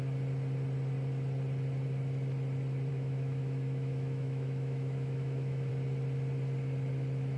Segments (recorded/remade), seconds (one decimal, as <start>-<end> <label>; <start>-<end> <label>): 0.0-2.9 recorded; 2.9-5.7 remade; 5.7-7.4 recorded